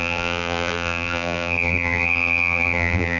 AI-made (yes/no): yes